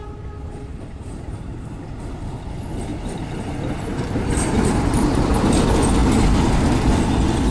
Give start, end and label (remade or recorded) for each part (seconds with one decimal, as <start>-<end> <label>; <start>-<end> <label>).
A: 0.0-0.7 recorded; 0.7-1.8 remade; 1.8-2.9 recorded; 2.9-3.5 remade; 3.5-3.9 recorded; 3.9-4.8 remade; 4.8-7.5 recorded